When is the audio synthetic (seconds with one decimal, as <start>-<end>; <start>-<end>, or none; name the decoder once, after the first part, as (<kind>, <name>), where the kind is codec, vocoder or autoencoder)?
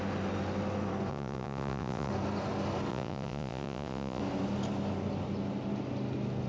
1.1-2.1 (vocoder, Vocos); 2.9-4.2